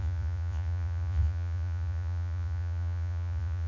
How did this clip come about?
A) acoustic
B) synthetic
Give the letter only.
B